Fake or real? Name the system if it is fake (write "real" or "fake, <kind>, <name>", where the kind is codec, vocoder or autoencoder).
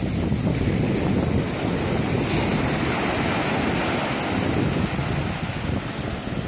real